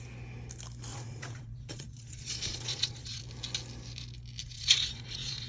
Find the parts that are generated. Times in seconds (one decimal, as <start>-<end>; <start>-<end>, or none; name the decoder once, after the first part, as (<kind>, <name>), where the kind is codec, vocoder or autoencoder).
0.9-3.2 (vocoder, Vocos); 4.4-5.5